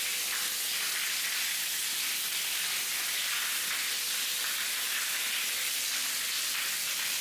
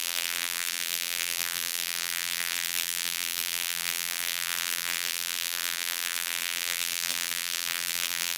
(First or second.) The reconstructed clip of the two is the second